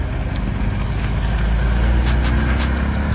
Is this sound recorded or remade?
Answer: recorded